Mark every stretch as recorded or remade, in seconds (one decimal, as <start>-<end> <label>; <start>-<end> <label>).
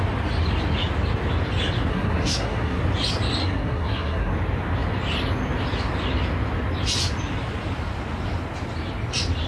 0.0-1.9 recorded; 1.9-2.8 remade; 2.8-3.4 recorded; 3.4-4.3 remade; 4.3-9.5 recorded